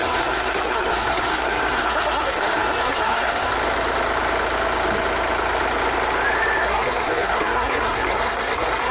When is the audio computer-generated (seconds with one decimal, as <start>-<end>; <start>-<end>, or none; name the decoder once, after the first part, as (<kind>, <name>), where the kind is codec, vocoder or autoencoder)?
0.0-3.5 (codec, SNAC); 6.6-8.9

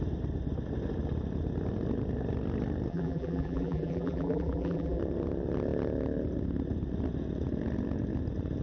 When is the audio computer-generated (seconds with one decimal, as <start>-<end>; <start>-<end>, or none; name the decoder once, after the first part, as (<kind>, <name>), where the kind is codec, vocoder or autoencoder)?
2.9-5.0 (vocoder, BigVGAN v2)

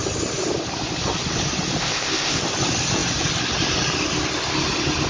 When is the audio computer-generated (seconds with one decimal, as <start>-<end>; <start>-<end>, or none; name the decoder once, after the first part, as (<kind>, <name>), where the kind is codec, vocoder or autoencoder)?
1.8-2.4 (codec, ZipCodec)

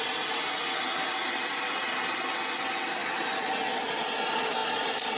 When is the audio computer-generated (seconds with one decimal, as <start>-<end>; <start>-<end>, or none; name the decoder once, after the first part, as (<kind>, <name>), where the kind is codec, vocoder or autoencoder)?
none

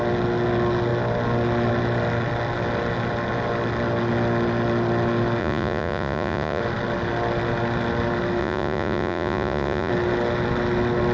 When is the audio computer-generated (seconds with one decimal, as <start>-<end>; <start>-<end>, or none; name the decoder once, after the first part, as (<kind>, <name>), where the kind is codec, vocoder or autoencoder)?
5.4-6.6 (vocoder, Vocos); 8.4-9.9

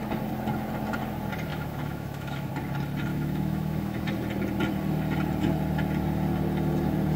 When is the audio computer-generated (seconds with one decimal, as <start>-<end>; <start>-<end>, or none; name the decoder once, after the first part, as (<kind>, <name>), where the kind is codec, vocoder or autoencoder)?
1.5-2.5 (autoencoder, DAC-VAE); 3.1-4.0

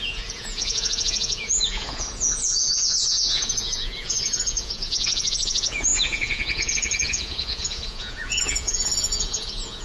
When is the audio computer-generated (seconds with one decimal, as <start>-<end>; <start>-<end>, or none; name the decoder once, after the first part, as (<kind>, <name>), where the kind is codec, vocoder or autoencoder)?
0.0-9.8 (vocoder, Vocos)